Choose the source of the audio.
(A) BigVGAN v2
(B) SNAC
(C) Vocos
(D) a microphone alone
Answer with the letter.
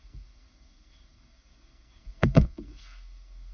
B